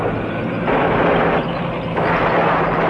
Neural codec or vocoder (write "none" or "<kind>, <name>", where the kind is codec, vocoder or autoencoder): none